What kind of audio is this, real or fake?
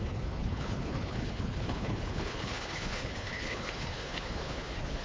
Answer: fake